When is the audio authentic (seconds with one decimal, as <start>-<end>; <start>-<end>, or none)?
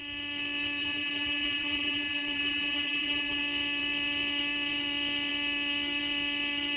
0.0-0.8; 3.4-6.8